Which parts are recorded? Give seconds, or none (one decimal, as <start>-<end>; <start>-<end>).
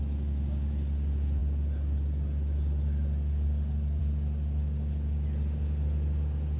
0.0-6.6